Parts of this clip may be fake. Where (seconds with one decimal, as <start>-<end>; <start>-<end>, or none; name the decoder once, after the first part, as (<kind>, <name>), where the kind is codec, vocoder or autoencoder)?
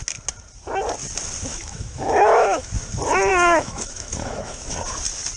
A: 1.5-2.7 (autoencoder, DAC-VAE); 3.3-4.7